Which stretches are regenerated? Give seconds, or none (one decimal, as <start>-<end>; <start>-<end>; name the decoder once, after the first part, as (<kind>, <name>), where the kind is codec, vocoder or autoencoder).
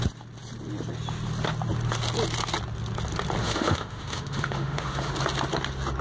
3.4-5.1 (autoencoder, DAC-VAE)